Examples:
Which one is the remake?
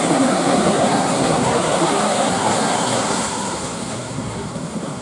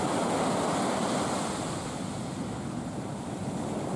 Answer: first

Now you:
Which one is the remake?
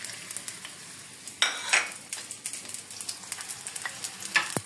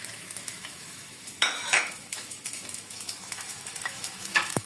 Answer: second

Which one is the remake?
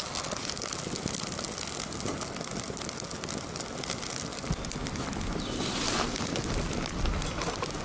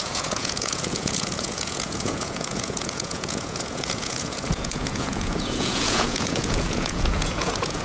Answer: second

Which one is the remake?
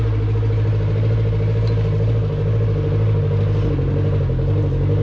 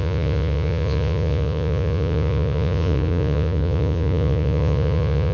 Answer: second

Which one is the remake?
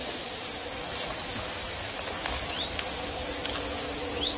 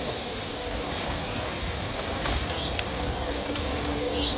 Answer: second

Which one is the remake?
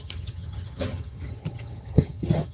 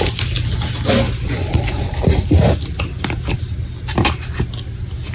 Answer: first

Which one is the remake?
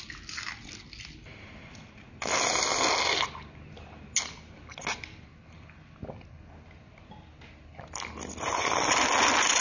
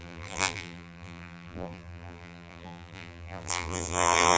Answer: second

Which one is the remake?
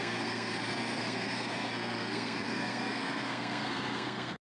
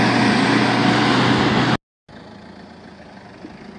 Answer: first